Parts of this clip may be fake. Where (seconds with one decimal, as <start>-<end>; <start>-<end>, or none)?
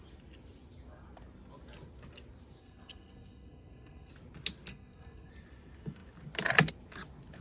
2.6-4.1; 4.7-5.3